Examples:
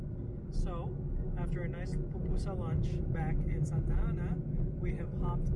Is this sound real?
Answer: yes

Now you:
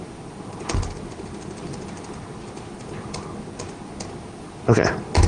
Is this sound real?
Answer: yes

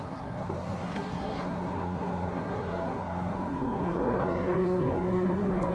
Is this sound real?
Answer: no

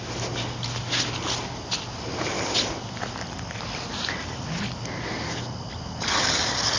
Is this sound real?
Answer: yes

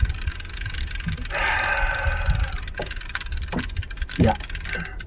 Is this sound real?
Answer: yes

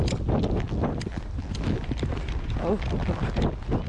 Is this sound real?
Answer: yes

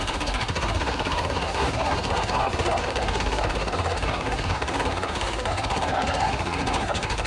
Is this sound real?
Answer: no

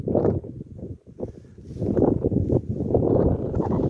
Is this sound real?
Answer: yes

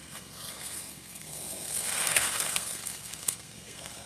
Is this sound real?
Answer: no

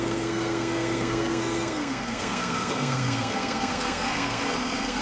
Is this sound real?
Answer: no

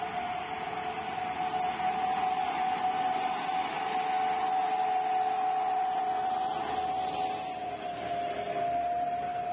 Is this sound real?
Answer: yes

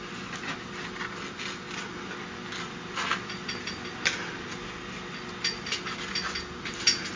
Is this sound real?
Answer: yes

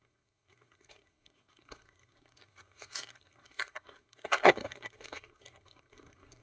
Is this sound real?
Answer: no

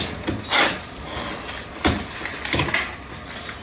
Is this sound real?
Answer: yes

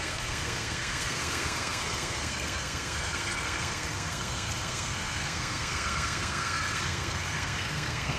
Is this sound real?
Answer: no